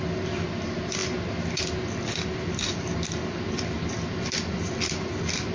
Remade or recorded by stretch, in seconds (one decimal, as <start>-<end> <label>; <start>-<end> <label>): 0.0-5.5 recorded